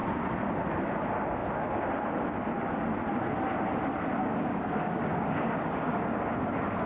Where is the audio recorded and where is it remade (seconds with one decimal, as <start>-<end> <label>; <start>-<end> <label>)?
0.0-4.2 recorded; 4.2-6.3 remade; 6.3-6.9 recorded